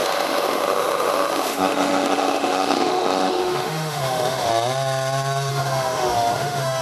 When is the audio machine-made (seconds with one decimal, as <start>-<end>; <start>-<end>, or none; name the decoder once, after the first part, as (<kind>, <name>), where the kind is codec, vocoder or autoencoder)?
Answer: 0.0-4.5 (autoencoder, DAC-VAE); 5.5-6.8